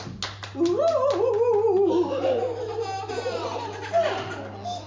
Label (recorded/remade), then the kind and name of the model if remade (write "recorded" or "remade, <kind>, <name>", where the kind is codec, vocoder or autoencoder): recorded